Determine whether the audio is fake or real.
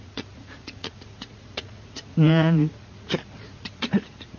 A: fake